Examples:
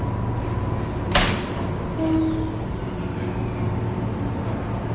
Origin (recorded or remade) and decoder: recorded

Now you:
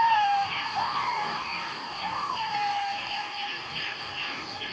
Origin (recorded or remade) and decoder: remade, codec, DAC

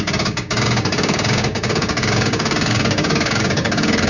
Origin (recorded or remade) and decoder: remade, codec, DAC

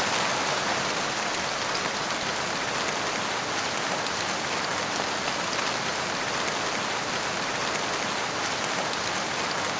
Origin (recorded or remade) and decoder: recorded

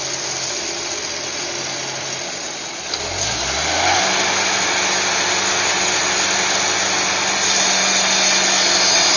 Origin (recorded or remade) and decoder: recorded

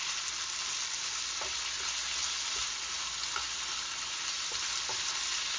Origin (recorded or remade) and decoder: recorded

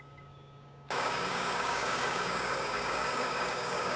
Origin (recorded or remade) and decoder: remade, codec, DAC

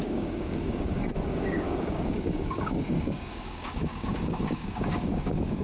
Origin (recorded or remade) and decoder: remade, codec, DAC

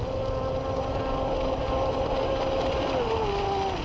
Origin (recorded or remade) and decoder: recorded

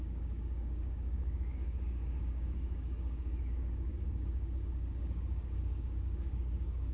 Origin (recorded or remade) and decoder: remade, codec, DAC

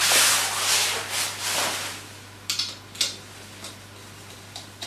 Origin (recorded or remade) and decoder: recorded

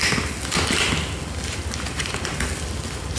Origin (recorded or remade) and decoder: recorded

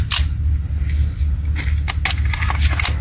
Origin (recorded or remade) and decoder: recorded